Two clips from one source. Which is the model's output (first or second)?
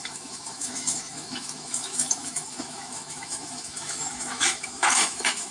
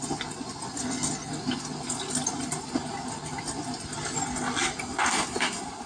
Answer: first